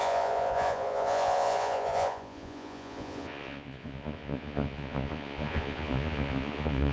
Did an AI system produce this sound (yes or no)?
yes